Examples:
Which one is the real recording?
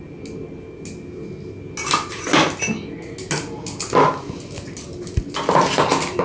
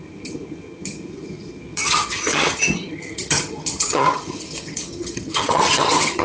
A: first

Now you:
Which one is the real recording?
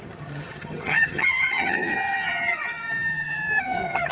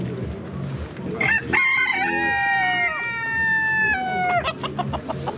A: second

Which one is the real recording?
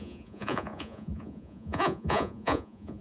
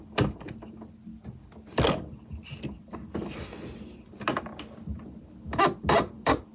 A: second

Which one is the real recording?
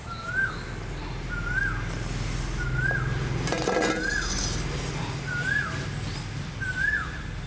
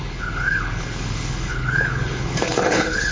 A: first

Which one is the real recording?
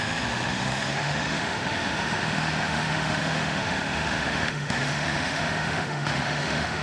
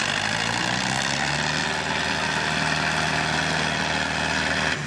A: second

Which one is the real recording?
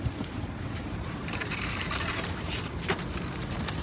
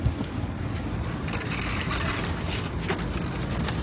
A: second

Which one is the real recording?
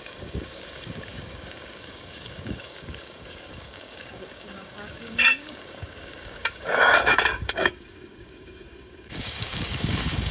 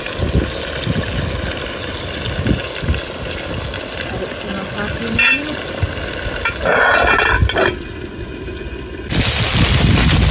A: second